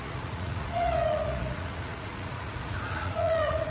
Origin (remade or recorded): remade